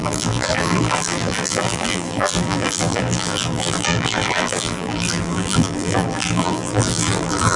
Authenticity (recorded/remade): remade